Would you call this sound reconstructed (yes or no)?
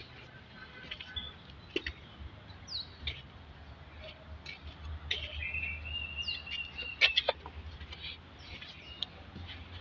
no